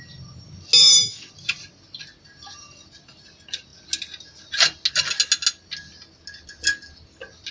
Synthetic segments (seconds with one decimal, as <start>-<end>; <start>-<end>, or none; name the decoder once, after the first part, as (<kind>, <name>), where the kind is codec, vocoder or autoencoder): 0.8-1.3 (autoencoder, DAC-VAE)